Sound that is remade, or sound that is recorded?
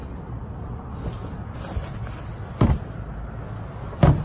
recorded